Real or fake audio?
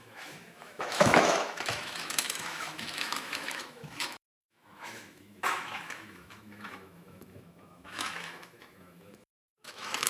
fake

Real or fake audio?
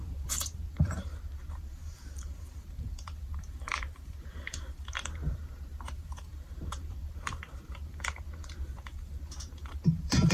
fake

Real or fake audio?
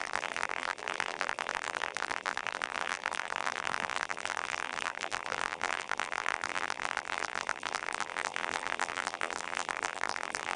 fake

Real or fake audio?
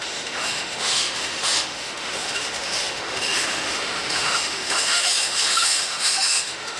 fake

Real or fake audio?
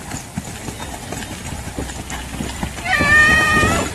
real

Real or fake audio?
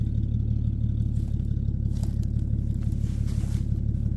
real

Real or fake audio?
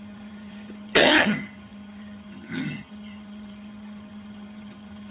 fake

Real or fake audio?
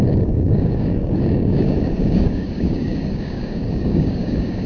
fake